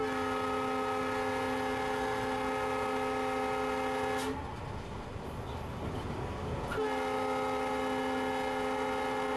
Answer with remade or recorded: recorded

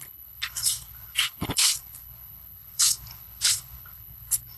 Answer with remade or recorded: remade